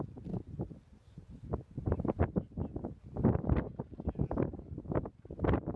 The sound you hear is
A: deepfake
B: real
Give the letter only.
B